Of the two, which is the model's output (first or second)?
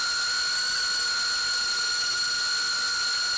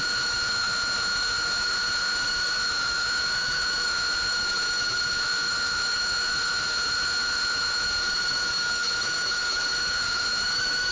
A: second